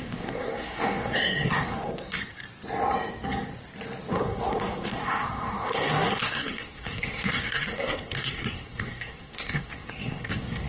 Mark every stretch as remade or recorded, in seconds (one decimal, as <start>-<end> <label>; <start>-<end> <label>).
0.0-2.2 remade; 2.2-4.1 recorded; 4.1-10.7 remade